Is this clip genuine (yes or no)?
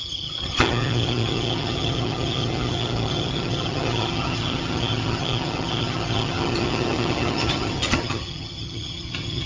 no